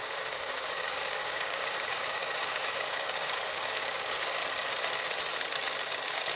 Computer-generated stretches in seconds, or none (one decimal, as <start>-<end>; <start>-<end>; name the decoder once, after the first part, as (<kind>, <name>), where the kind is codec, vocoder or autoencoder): 0.0-4.4 (codec, DAC); 5.8-6.4